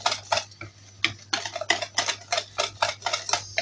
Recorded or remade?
recorded